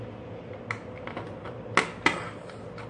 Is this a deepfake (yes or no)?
no